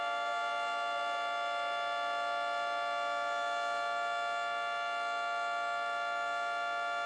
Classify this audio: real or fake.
real